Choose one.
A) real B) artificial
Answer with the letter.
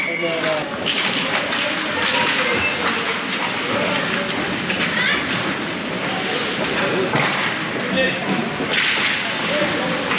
A